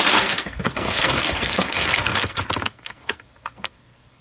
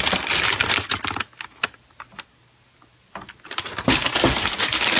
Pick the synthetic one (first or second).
first